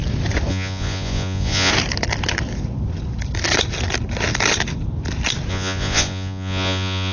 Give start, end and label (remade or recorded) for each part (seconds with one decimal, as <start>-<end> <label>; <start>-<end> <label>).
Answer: 0.0-0.5 recorded; 0.5-1.7 remade; 1.7-5.5 recorded; 5.5-7.1 remade

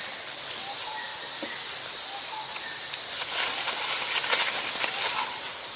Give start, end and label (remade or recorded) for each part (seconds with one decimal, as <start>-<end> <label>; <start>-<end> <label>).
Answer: 0.0-5.8 recorded

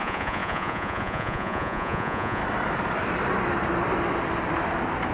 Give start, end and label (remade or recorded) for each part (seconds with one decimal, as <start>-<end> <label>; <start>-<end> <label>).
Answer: 0.0-2.4 remade; 2.4-5.1 recorded

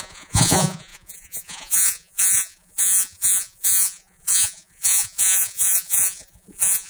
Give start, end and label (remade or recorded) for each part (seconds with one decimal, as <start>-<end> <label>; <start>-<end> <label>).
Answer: 0.0-6.9 remade

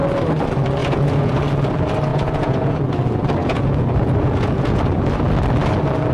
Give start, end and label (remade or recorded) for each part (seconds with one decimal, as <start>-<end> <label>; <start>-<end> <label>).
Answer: 0.0-0.8 recorded; 0.8-1.4 remade; 1.4-2.1 recorded; 2.1-2.8 remade; 2.8-3.4 recorded; 3.4-4.8 remade; 4.8-6.1 recorded

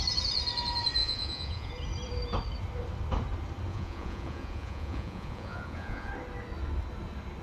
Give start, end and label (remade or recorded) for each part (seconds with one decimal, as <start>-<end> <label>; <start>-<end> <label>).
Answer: 0.0-1.0 recorded; 1.0-1.7 remade; 1.7-3.7 recorded; 3.7-6.1 remade; 6.1-7.4 recorded